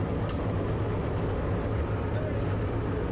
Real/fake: real